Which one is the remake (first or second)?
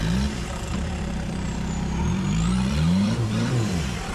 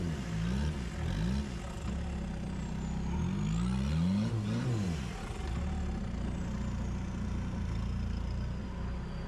first